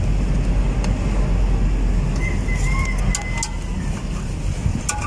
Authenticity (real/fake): real